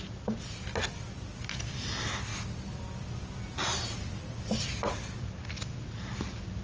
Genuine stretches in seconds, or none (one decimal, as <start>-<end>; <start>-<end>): 0.0-6.6